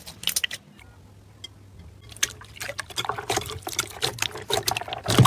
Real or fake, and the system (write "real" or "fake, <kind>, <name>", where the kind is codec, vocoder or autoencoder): real